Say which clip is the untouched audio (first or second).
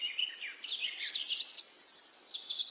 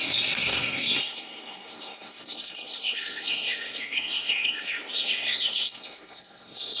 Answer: first